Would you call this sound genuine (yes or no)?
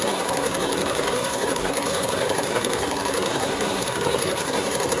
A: no